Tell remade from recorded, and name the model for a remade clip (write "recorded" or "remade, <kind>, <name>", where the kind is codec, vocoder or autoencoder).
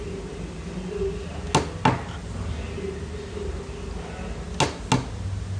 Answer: recorded